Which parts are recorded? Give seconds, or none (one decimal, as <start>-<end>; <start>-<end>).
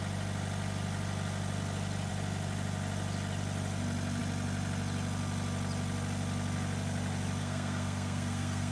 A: 0.0-7.4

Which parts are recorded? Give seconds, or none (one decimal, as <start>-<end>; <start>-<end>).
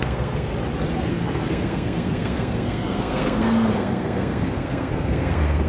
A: 0.5-1.1